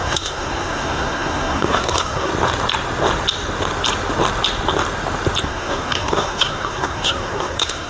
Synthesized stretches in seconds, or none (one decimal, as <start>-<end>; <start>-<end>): 0.0-2.3; 5.4-7.9